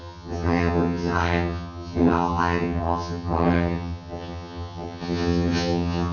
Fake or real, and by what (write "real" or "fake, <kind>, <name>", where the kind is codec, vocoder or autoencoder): fake, vocoder, HiFi-GAN